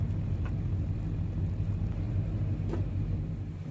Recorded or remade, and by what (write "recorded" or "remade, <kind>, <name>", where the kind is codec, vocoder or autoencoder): recorded